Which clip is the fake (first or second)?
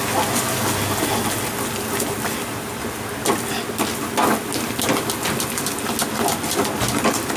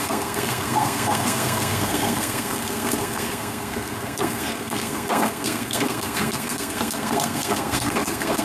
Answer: second